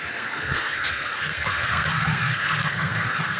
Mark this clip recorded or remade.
remade